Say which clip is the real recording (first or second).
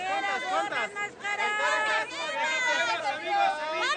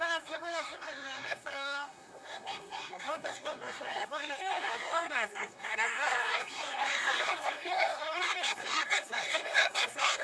first